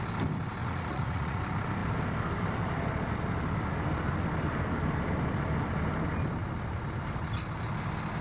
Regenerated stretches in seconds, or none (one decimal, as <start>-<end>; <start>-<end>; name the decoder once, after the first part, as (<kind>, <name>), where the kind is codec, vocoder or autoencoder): 0.6-1.4 (vocoder, Vocos)